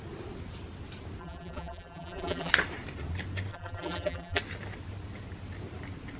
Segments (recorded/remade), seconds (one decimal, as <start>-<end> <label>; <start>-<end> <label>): 0.0-1.2 recorded; 1.2-2.5 remade; 2.5-3.5 recorded; 3.5-4.4 remade; 4.4-6.2 recorded